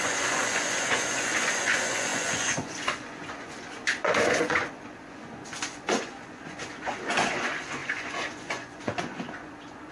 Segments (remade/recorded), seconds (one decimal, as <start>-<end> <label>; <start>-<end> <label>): 0.0-9.9 remade